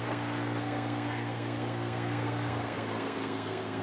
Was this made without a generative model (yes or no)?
no